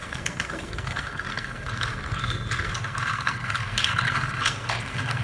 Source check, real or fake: fake